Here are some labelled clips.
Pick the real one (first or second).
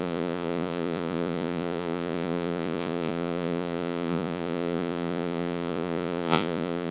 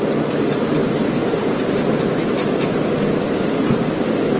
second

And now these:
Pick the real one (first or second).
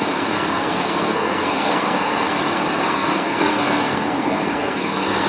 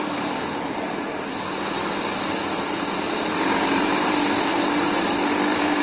second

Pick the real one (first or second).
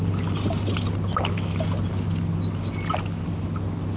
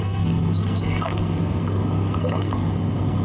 first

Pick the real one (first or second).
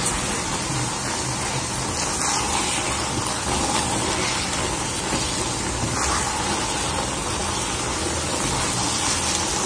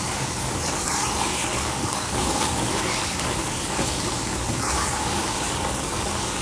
first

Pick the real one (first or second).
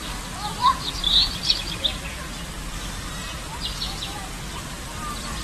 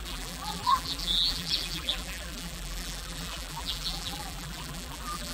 first